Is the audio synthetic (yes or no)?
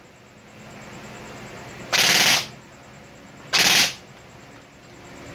no